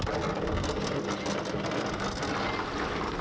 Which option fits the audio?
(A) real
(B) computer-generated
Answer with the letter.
A